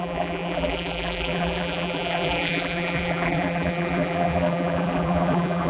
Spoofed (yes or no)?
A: yes